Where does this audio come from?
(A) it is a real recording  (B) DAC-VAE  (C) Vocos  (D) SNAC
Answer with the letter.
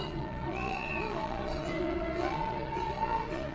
C